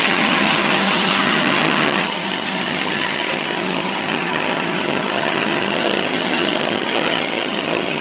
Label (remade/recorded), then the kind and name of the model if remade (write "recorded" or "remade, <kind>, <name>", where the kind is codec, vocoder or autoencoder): remade, vocoder, HiFi-GAN